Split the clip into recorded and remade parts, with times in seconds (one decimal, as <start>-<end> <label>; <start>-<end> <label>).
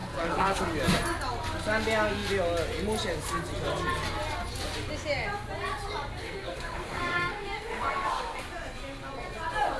0.0-0.6 remade; 0.6-6.2 recorded; 6.2-8.4 remade; 8.4-9.8 recorded